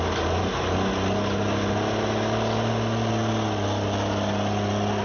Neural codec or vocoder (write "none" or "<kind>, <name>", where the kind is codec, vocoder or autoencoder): none